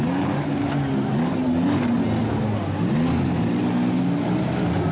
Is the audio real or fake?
real